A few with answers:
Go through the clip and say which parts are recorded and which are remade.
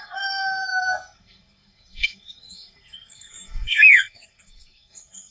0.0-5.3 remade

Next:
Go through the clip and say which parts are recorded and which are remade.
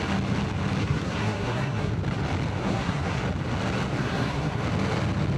0.0-0.8 recorded; 0.8-1.9 remade; 1.9-2.6 recorded; 2.6-3.2 remade; 3.2-4.0 recorded; 4.0-4.6 remade; 4.6-5.4 recorded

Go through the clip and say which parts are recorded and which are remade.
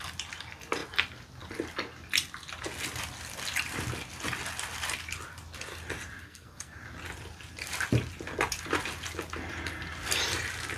0.0-6.2 recorded; 6.2-6.8 remade; 6.8-10.8 recorded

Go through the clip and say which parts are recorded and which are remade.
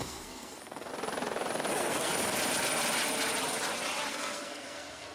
0.0-0.9 remade; 0.9-1.7 recorded; 1.7-2.1 remade; 2.1-4.1 recorded; 4.1-5.1 remade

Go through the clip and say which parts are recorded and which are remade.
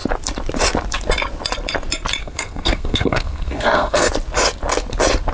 0.0-2.2 recorded; 2.2-4.1 remade; 4.1-5.3 recorded